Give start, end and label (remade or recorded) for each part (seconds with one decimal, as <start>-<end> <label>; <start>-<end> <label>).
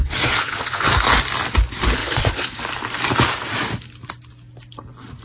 0.0-0.9 remade; 0.9-2.0 recorded; 2.0-2.6 remade; 2.6-5.2 recorded